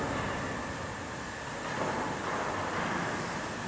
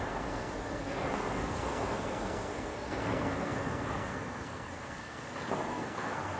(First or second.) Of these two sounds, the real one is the first